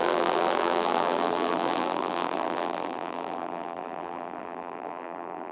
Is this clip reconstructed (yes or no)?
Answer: yes